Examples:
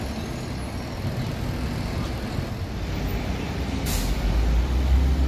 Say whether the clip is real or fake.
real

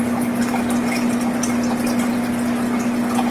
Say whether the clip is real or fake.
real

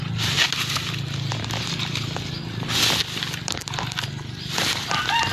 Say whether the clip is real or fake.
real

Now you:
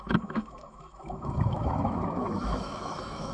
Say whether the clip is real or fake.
fake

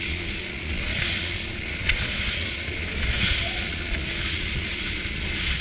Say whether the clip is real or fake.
fake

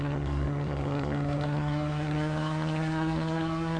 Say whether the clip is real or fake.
fake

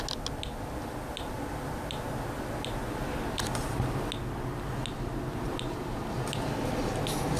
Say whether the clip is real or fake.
real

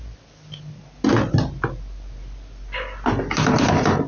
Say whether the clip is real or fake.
real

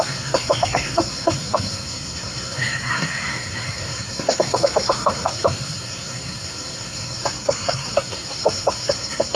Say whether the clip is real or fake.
fake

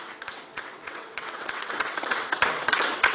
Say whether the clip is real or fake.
fake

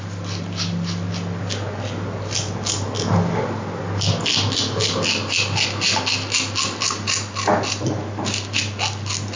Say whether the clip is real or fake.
real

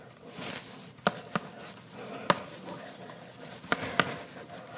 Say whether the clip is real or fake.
real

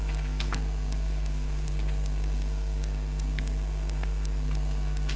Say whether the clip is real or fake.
fake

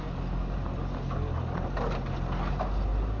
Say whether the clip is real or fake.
real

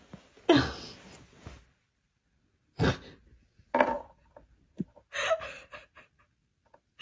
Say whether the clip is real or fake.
real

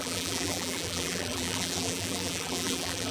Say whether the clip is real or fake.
fake